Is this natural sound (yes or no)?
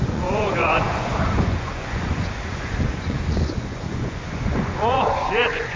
no